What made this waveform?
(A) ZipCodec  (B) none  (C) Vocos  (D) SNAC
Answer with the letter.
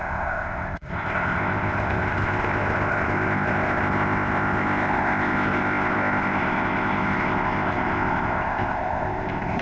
A